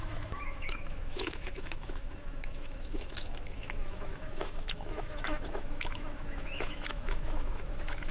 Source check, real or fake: fake